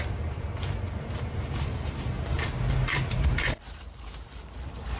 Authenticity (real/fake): fake